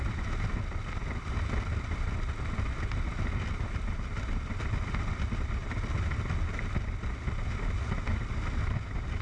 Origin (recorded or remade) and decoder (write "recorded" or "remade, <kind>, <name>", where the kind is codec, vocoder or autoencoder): recorded